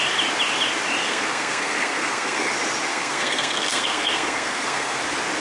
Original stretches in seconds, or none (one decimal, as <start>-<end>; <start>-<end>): 0.0-1.0; 2.5-2.9; 5.0-5.4